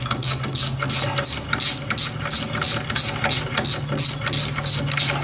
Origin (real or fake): real